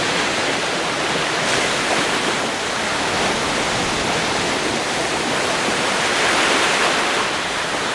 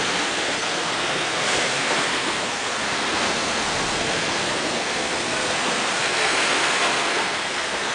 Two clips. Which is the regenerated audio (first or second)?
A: second